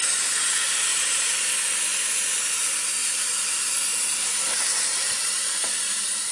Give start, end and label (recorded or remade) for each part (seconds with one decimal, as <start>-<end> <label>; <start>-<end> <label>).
0.0-0.9 recorded; 0.9-1.5 remade; 1.5-3.0 recorded; 3.0-3.5 remade; 3.5-3.9 recorded; 3.9-6.3 remade